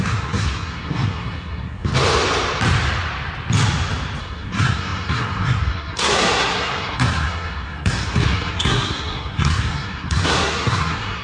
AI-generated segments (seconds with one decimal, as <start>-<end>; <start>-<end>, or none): 0.0-1.9; 4.2-11.2